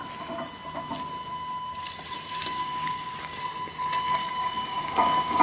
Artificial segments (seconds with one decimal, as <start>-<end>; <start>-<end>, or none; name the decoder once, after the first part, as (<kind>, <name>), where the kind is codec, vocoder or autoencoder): 2.4-3.4 (codec, DAC); 4.2-5.4